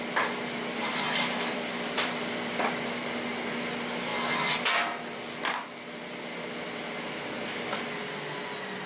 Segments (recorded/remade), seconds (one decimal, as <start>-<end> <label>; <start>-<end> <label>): 0.0-0.8 recorded; 0.8-2.7 remade; 2.7-8.9 recorded